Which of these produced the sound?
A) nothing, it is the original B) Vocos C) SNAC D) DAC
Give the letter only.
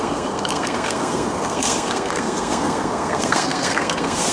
C